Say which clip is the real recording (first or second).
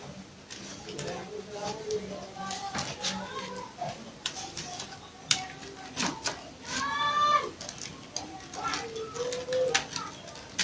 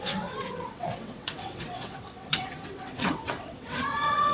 first